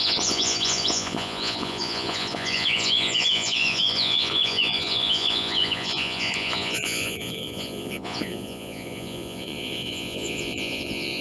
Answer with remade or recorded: remade